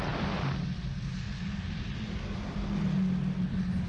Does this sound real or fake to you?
real